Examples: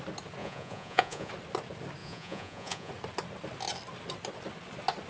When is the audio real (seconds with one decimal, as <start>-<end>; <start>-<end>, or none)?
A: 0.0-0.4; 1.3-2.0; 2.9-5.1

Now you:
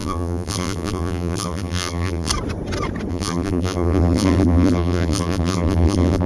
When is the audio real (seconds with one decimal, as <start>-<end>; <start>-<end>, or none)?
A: 2.3-3.1

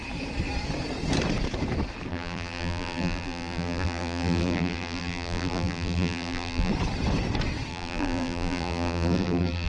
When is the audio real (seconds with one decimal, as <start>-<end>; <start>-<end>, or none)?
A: 0.0-2.1; 6.7-7.7

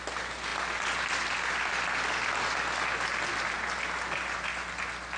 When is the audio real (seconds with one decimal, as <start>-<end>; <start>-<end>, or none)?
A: 0.0-5.2